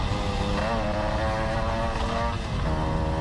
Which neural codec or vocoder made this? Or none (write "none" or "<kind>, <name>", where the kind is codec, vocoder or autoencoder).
none